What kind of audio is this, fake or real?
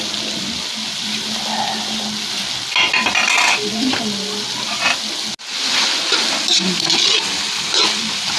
real